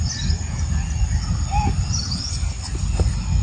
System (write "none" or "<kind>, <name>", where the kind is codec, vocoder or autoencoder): none